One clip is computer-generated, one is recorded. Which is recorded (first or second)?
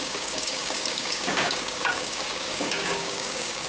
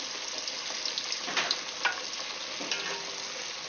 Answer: second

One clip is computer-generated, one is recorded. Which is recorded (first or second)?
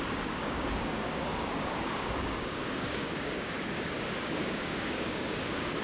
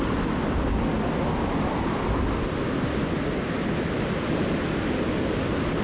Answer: second